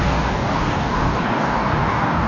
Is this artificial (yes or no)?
yes